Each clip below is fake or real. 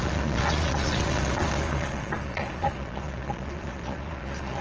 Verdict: fake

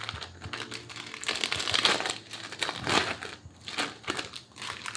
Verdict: real